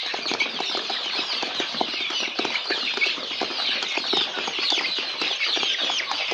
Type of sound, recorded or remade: recorded